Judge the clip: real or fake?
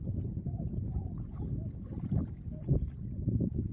real